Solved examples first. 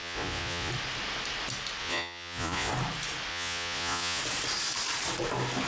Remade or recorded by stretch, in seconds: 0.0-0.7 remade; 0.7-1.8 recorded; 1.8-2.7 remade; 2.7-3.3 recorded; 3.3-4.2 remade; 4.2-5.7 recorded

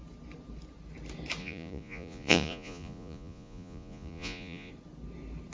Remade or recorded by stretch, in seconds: 0.0-1.4 recorded; 1.4-4.7 remade; 4.7-5.5 recorded

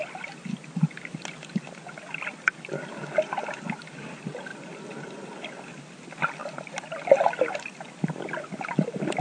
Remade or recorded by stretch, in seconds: 0.0-9.2 recorded

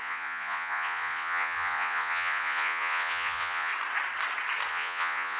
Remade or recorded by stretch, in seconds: 0.0-3.7 remade; 3.7-4.7 recorded; 4.7-5.4 remade

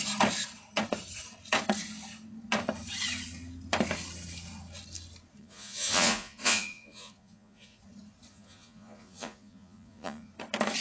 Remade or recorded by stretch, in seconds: 0.0-5.4 recorded; 5.4-7.8 remade; 7.8-8.3 recorded; 8.3-10.3 remade; 10.3-10.8 recorded

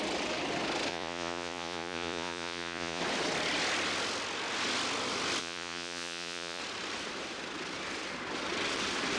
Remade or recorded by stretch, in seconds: 0.0-0.9 recorded; 0.9-3.0 remade; 3.0-5.4 recorded; 5.4-6.6 remade; 6.6-9.2 recorded